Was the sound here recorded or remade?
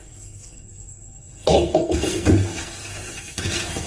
remade